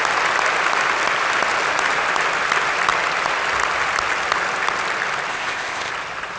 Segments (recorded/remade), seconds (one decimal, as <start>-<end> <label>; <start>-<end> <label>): 0.0-5.3 recorded; 5.3-5.9 remade; 5.9-6.4 recorded